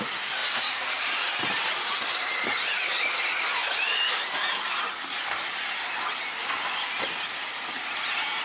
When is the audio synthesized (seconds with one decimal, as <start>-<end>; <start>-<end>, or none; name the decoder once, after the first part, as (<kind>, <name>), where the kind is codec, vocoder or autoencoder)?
0.4-2.5 (vocoder, BigVGAN v2)